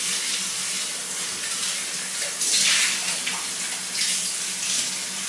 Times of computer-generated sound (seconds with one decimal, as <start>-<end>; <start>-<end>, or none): none